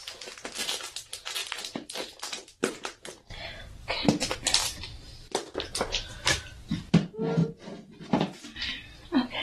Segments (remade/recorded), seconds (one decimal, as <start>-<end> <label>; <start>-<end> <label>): 0.0-1.4 recorded; 1.4-3.6 remade; 3.6-4.6 recorded; 4.6-5.3 remade; 5.3-9.4 recorded